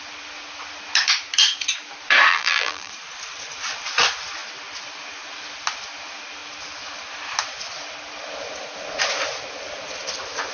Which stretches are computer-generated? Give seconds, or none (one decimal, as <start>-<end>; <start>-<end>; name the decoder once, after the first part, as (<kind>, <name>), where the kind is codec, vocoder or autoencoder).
2.3-2.9 (vocoder, BigVGAN v2)